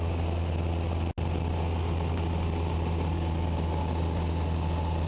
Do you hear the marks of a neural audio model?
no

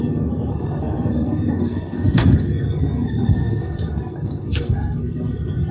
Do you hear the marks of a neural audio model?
yes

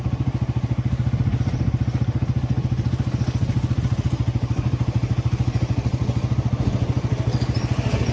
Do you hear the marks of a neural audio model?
no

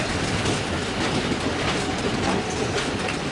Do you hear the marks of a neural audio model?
no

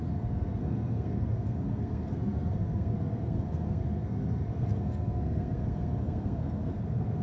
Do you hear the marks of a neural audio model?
yes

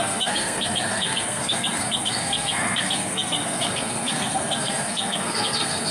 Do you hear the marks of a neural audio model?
yes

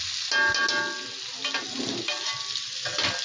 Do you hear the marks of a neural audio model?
no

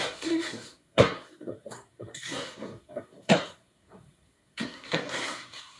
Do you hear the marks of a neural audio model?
yes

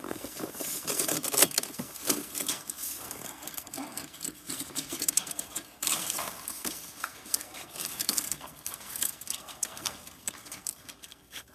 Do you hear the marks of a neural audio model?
yes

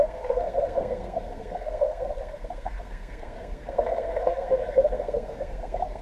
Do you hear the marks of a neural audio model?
yes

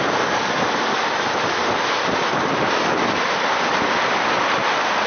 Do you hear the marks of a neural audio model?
no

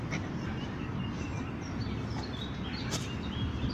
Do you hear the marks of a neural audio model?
no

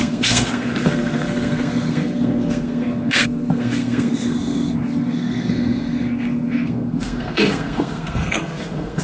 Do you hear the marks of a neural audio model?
yes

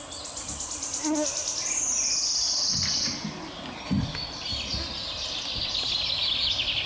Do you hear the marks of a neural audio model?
no